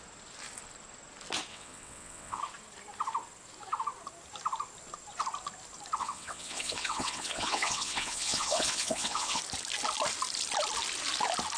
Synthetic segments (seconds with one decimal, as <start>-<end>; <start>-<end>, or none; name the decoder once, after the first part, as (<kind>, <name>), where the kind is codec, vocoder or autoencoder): 1.5-2.4 (vocoder, WaveNeXt); 6.0-9.4